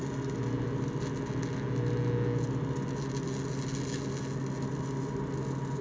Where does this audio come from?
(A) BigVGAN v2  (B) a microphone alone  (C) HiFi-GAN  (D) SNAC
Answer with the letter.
B